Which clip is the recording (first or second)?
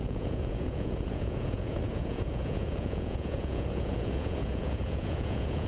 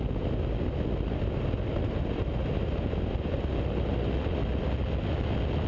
second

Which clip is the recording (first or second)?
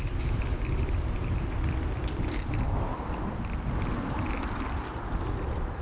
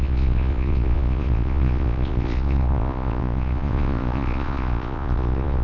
first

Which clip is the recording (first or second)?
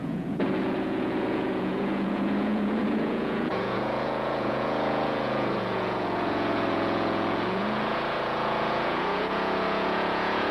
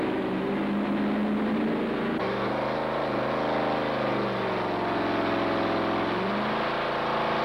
second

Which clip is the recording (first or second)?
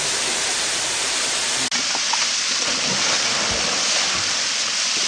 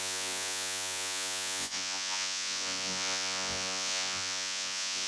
first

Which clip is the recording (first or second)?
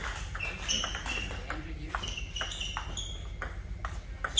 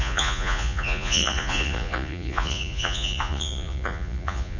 first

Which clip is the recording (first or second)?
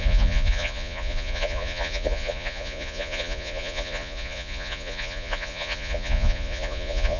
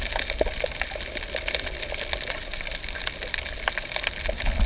second